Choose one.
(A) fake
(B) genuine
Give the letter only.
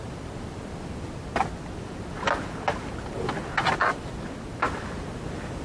A